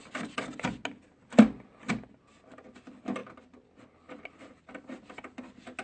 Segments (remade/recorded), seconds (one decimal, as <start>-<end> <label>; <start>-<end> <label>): 0.0-5.8 recorded